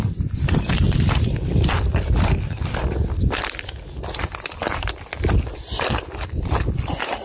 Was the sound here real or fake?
real